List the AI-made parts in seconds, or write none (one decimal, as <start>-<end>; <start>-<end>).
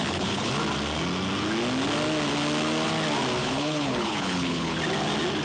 0.0-0.5; 3.4-4.8